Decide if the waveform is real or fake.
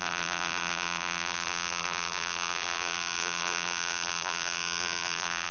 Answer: fake